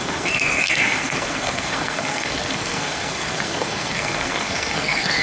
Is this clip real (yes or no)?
no